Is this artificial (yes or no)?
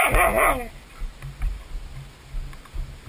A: no